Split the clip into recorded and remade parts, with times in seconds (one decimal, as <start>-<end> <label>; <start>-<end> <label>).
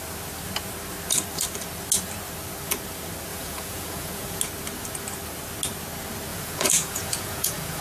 0.0-3.3 recorded; 3.3-4.4 remade; 4.4-6.3 recorded; 6.3-7.8 remade